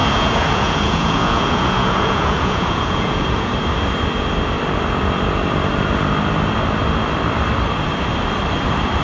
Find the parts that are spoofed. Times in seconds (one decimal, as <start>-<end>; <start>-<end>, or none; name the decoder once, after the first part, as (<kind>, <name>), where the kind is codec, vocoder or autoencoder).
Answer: 0.0-3.5 (vocoder, Vocos)